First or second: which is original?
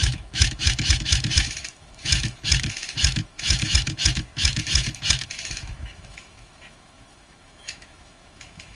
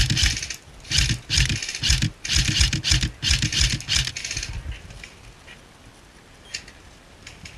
second